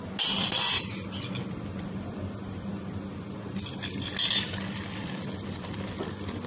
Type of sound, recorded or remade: recorded